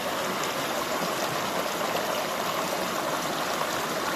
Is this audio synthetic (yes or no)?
no